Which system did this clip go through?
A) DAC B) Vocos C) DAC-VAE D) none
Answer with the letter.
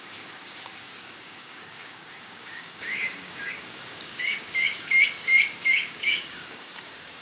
A